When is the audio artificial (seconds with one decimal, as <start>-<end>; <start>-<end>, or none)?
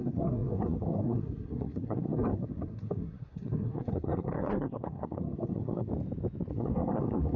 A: 0.0-5.9; 6.5-7.4